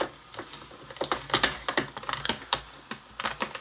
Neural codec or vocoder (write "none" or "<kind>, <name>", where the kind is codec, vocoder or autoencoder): none